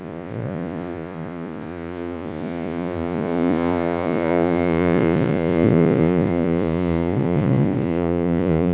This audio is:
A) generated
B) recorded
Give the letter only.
A